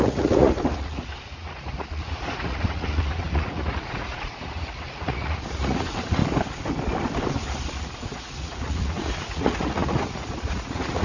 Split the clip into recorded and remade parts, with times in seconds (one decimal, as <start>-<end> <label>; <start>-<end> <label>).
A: 0.0-6.2 remade; 6.2-7.8 recorded; 7.8-11.0 remade